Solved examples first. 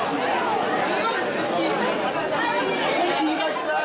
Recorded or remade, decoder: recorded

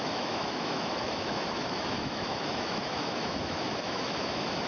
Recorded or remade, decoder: remade, autoencoder, DAC-VAE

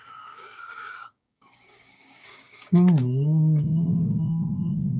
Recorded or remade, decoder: remade, codec, DAC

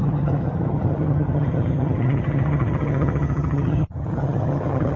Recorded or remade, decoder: remade, vocoder, HiFi-GAN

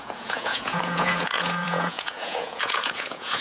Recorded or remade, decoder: remade, vocoder, Vocos